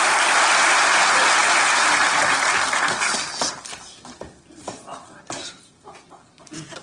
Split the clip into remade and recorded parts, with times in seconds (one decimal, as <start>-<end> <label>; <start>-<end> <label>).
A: 0.0-6.8 recorded